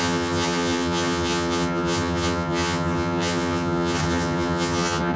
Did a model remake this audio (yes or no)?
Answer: yes